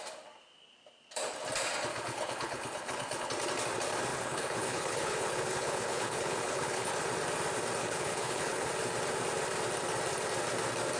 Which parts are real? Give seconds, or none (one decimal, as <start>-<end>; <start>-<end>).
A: 0.0-1.9; 3.3-4.1; 6.9-7.8; 8.7-11.0